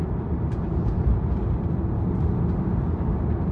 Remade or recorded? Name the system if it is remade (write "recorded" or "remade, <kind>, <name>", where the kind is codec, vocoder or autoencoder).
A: recorded